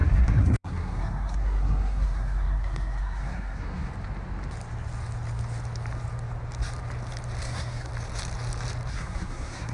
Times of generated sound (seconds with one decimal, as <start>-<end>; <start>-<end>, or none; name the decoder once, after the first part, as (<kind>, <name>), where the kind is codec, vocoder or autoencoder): 0.0-3.9 (codec, SNAC); 7.4-7.9; 8.9-9.7